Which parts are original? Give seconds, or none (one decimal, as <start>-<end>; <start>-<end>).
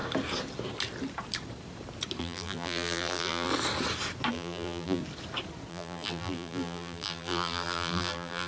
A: 0.0-2.2; 3.5-4.3; 5.0-5.7